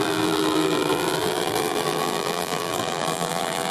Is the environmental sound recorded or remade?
remade